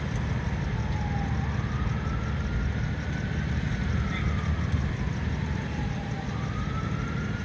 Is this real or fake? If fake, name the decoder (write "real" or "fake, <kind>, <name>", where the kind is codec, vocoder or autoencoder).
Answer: real